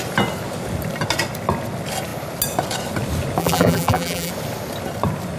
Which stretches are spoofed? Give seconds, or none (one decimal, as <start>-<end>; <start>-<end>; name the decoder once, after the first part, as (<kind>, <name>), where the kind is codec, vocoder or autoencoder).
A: 3.4-4.3 (vocoder, BigVGAN v2)